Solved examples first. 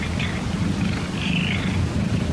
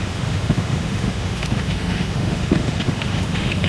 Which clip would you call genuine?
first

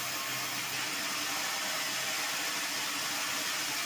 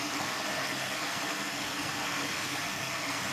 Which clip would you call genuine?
first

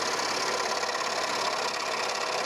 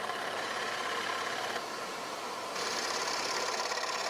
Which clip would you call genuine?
first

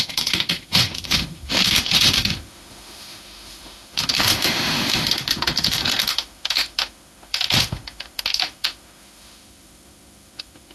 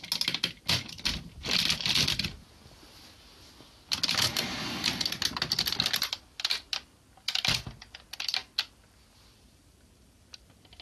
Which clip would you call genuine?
second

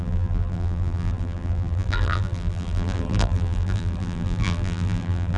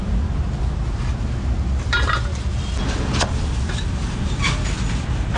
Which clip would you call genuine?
second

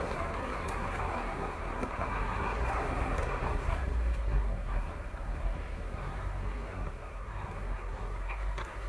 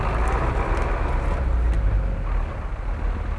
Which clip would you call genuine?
second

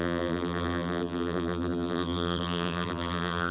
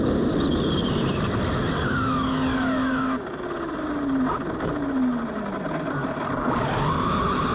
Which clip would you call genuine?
second